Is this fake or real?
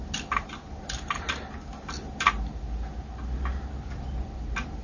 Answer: real